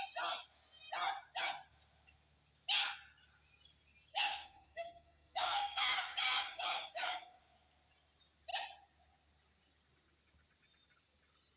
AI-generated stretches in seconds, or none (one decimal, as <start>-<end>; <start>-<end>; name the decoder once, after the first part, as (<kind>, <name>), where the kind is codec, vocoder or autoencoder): 4.1-7.4 (codec, DAC)